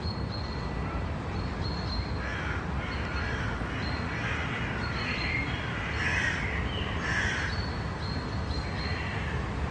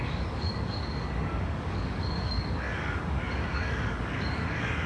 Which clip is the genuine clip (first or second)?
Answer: first